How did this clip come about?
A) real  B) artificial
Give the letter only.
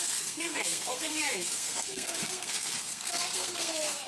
B